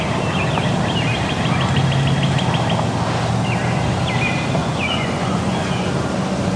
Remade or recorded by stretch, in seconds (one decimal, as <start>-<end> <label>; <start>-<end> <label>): 0.0-4.6 recorded; 4.6-5.9 remade; 5.9-6.6 recorded